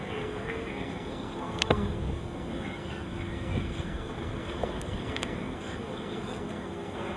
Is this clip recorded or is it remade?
remade